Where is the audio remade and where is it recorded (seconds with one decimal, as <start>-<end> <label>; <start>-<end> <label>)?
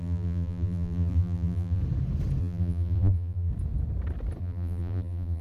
0.0-1.8 remade; 1.8-2.4 recorded; 2.4-3.5 remade; 3.5-4.4 recorded; 4.4-5.4 remade